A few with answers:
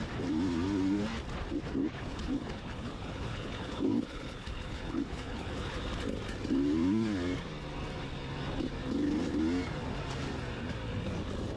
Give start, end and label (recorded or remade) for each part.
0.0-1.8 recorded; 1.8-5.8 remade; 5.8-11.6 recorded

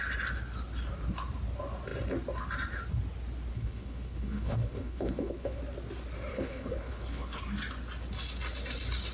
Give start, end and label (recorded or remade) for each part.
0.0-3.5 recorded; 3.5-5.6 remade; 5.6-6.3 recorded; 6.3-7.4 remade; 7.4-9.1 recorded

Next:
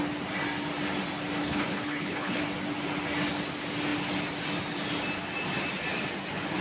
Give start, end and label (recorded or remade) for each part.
0.0-1.4 recorded; 1.4-2.4 remade; 2.4-6.6 recorded